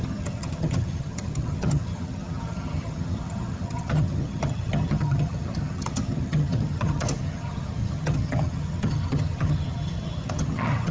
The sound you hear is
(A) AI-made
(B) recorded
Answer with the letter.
A